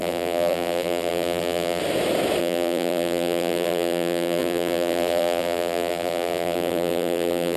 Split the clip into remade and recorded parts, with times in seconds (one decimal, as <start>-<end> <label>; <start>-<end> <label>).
0.0-1.8 remade; 1.8-2.4 recorded; 2.4-7.6 remade